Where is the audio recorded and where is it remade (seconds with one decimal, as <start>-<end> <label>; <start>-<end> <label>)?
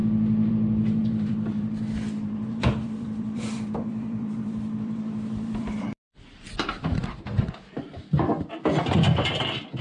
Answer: 0.0-0.5 recorded; 0.5-9.8 remade